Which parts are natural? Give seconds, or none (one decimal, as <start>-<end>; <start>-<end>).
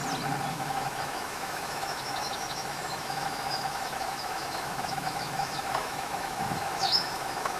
0.0-0.5